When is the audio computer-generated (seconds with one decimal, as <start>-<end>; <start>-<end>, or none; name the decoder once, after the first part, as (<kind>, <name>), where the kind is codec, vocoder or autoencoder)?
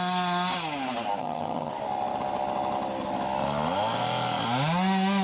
1.2-1.7 (vocoder, HiFi-GAN)